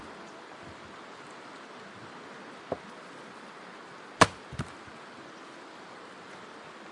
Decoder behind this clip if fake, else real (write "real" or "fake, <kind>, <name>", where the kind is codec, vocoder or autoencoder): real